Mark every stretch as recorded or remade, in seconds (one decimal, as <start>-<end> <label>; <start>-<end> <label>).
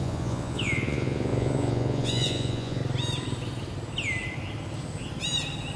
0.0-2.8 remade; 2.8-5.8 recorded